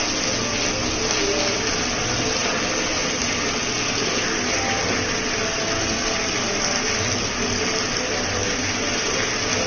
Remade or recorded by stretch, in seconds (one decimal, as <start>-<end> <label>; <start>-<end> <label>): 0.0-9.7 recorded